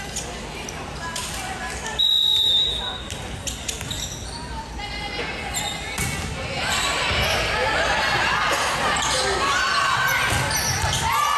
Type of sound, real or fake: real